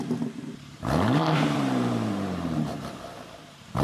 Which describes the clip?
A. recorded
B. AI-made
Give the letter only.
B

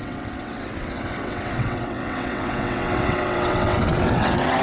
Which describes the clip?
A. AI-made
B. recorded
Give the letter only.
A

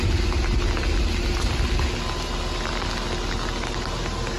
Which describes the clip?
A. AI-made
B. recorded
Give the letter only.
B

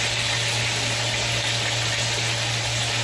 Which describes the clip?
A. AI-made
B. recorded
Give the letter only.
B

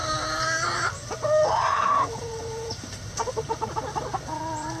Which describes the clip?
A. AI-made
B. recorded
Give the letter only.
B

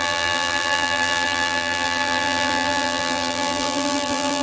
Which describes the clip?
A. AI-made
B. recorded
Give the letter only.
A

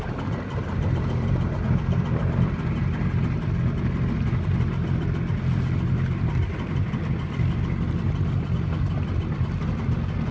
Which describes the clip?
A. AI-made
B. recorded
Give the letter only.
B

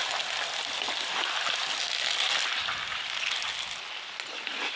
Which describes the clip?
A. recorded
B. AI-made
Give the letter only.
A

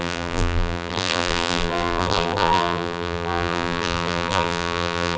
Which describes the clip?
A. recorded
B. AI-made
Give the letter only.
B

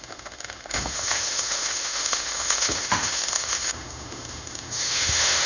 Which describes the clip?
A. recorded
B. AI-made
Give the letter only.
B